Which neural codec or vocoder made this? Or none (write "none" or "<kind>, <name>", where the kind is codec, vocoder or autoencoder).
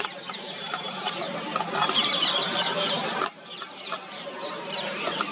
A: vocoder, BigVGAN v2